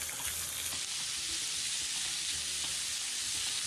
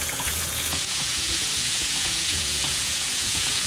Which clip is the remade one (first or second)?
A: second